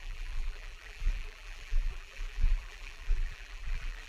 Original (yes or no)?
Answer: no